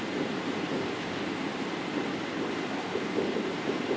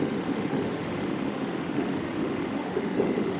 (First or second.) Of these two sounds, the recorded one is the first